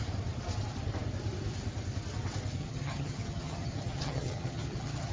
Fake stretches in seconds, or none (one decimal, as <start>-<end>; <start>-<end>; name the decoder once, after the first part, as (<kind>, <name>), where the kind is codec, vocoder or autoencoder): 2.6-5.1 (vocoder, HiFi-GAN)